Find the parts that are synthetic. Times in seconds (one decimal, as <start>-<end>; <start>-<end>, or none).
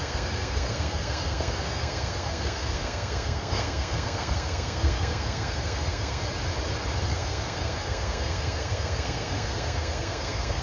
0.0-6.2; 7.0-10.6